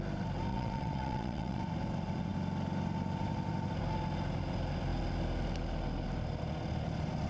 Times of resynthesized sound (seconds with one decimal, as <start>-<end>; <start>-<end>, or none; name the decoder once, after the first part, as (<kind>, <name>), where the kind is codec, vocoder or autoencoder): 0.5-1.6 (vocoder, WaveNeXt)